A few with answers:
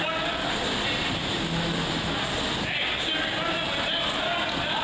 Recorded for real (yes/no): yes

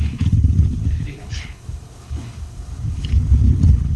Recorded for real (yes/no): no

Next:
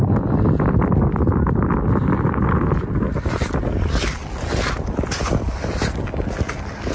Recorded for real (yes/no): yes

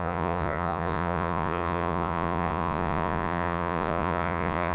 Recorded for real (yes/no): no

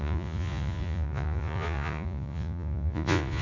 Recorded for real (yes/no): no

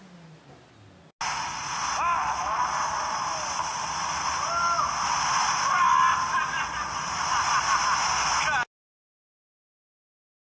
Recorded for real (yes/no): yes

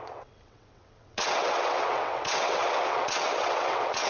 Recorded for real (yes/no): no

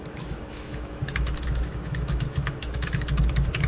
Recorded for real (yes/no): no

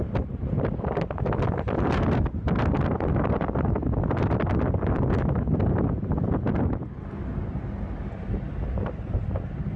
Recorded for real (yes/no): yes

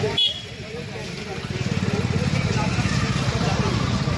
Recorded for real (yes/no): yes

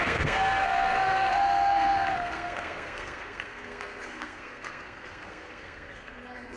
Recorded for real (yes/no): no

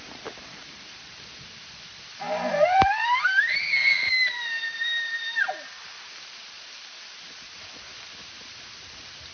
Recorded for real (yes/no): no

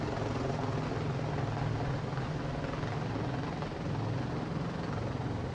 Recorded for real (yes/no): yes